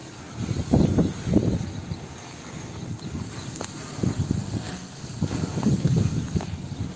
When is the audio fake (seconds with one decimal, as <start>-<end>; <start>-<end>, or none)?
4.4-5.2